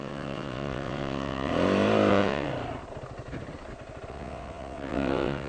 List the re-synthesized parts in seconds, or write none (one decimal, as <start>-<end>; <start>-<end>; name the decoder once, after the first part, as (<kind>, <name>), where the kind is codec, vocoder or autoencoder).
0.0-1.5 (vocoder, WaveNeXt); 2.1-2.5; 4.1-5.5